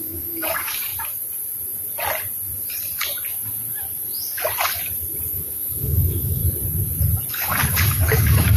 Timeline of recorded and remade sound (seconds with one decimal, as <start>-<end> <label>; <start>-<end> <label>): 0.0-0.9 remade; 0.9-5.3 recorded; 5.3-6.4 remade; 6.4-7.3 recorded; 7.3-8.6 remade